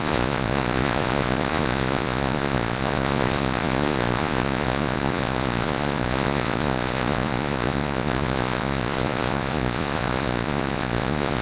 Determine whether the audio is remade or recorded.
remade